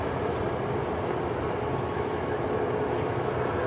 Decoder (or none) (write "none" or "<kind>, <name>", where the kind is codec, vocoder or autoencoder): none